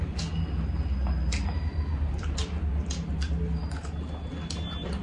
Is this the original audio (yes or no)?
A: yes